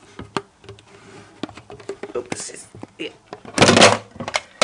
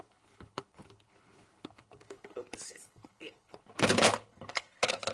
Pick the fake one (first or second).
second